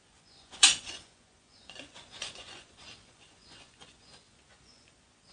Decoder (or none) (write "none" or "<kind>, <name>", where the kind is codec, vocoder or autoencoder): vocoder, Vocos